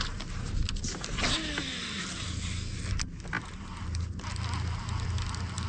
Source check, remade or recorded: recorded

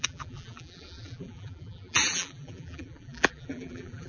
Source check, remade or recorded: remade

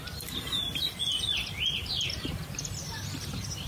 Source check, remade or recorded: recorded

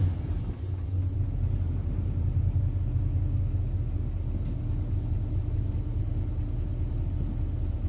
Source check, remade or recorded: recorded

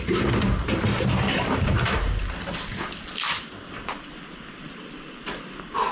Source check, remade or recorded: remade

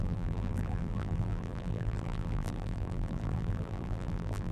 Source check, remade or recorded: remade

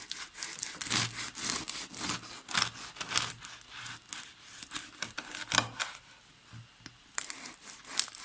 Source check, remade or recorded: recorded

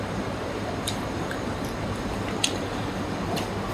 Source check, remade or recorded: remade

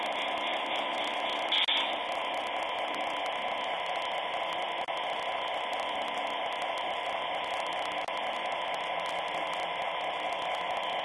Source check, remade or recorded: recorded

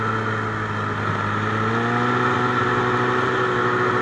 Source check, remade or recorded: recorded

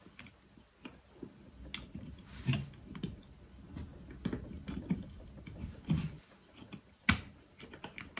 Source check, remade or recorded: recorded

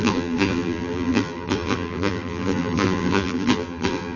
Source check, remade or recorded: remade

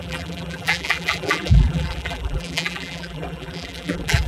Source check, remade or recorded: remade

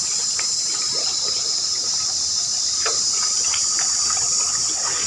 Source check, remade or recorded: remade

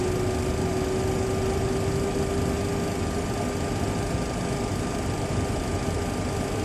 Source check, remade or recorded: recorded